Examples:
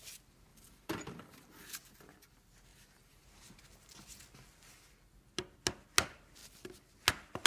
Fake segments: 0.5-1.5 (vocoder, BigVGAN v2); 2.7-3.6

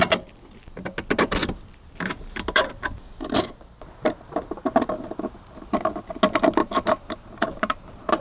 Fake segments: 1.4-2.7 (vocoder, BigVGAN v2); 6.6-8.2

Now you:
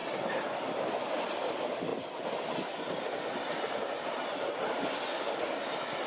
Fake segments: none

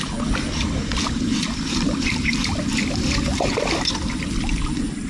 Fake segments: 0.9-4.0 (vocoder, BigVGAN v2)

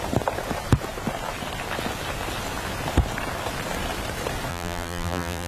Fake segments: 4.5-5.5 (vocoder, BigVGAN v2)

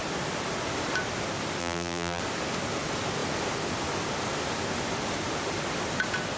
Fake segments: 1.6-2.2 (vocoder, BigVGAN v2)

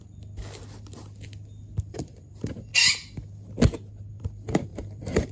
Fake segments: 1.9-2.7 (vocoder, BigVGAN v2); 4.1-5.3

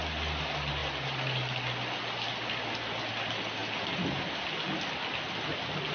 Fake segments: none